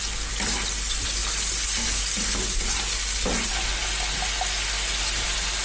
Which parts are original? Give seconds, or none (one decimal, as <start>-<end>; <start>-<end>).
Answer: 0.0-5.6

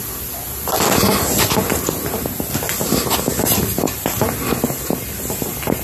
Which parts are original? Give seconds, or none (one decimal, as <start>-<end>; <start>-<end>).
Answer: 0.0-5.8

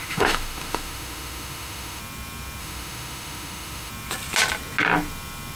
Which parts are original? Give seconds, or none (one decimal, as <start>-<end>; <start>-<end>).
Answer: 2.0-2.6; 3.9-5.6

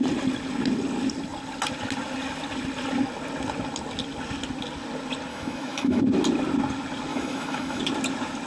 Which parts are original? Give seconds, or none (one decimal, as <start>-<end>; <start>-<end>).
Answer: 0.0-5.3; 6.0-7.1; 7.8-8.5

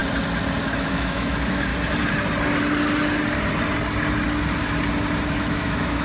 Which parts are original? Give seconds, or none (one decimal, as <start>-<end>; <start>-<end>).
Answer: 0.0-0.6; 1.7-5.3

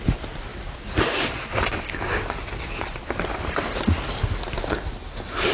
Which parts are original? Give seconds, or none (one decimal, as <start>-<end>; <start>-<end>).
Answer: 0.0-5.5

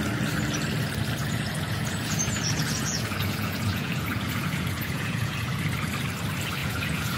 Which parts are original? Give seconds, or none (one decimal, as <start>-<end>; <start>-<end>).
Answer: 0.0-1.2; 5.5-6.6